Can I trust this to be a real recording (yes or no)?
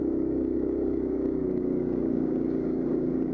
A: no